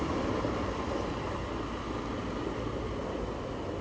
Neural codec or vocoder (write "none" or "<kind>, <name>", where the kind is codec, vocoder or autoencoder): none